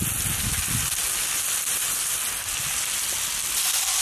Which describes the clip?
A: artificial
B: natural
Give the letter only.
B